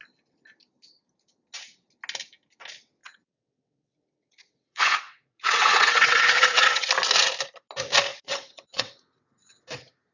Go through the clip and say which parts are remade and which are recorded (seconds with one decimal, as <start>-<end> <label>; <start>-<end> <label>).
0.0-3.0 recorded; 3.0-6.9 remade; 6.9-8.1 recorded; 8.1-9.6 remade; 9.6-10.1 recorded